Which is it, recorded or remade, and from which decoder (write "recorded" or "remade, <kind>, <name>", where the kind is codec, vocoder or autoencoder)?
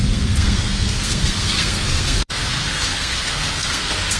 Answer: remade, codec, SNAC